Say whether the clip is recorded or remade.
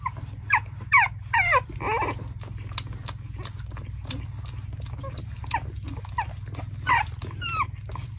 recorded